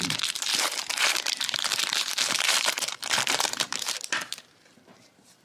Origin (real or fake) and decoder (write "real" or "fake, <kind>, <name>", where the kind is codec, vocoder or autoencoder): fake, vocoder, BigVGAN v2